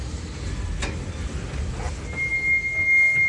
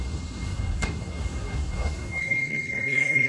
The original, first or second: first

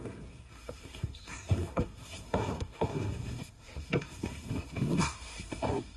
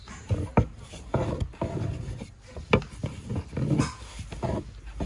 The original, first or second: second